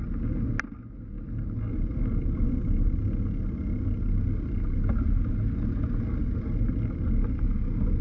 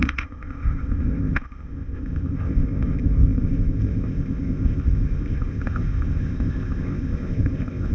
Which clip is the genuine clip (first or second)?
first